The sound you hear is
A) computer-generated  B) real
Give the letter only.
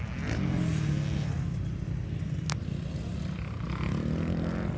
B